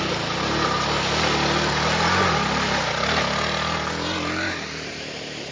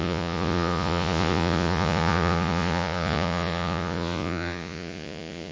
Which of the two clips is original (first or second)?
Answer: first